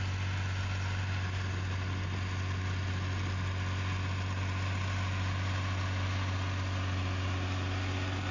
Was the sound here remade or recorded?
recorded